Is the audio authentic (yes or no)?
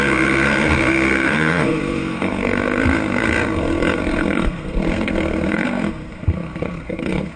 no